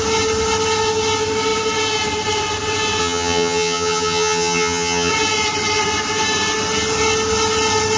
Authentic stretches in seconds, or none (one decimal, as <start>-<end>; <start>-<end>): 0.0-3.0; 5.1-8.0